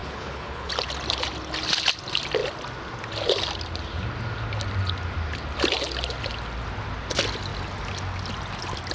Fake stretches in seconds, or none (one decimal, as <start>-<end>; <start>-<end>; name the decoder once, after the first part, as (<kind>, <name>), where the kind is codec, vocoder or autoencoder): 0.0-0.7 (codec, HILCodec)